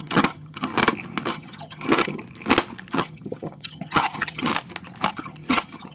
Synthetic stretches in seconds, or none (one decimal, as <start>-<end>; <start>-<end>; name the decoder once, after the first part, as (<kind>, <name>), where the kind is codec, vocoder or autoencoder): 0.0-0.7 (vocoder, HiFi-GAN); 1.3-2.2; 2.9-4.5; 5.1-5.9